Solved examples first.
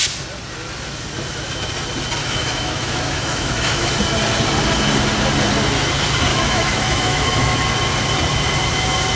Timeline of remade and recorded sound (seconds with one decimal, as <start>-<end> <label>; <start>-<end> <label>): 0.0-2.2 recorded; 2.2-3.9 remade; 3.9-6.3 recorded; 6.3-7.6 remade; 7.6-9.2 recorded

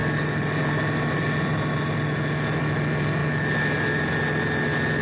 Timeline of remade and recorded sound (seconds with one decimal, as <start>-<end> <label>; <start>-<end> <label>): 0.0-5.0 recorded

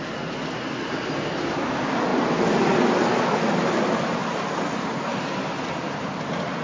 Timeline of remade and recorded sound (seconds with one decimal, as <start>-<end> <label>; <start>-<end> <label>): 0.0-4.2 recorded; 4.2-5.3 remade; 5.3-6.6 recorded

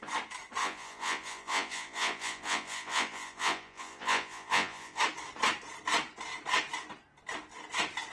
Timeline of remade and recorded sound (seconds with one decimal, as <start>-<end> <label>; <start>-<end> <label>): 0.0-0.6 recorded; 0.6-5.0 remade; 5.0-8.1 recorded

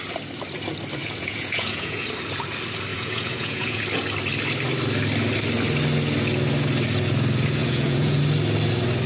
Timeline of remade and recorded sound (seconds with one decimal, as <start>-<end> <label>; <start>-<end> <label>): 0.0-1.0 recorded; 1.0-2.0 remade; 2.0-2.9 recorded; 2.9-3.8 remade; 3.8-7.6 recorded; 7.6-8.2 remade; 8.2-9.1 recorded